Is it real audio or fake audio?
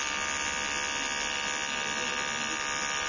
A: real